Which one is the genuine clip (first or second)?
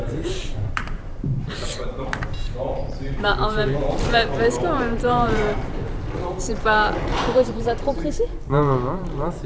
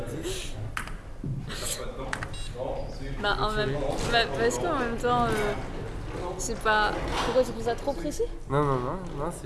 second